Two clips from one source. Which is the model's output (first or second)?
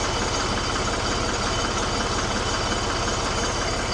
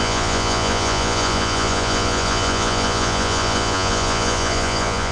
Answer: second